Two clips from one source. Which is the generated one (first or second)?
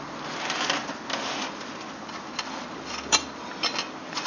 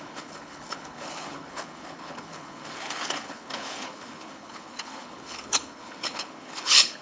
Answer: second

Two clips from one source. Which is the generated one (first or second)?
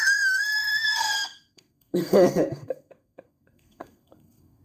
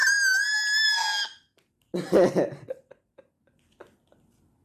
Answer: first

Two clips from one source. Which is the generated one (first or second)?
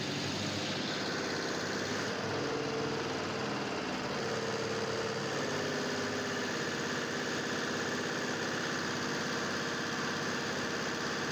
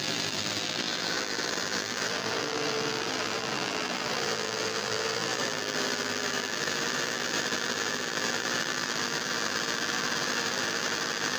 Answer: second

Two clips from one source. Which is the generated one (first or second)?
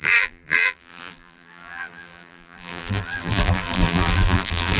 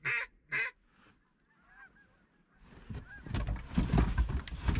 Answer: first